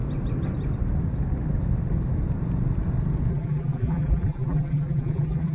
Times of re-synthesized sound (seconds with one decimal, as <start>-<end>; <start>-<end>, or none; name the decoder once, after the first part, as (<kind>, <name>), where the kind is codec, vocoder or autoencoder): 3.3-5.5 (vocoder, BigVGAN v2)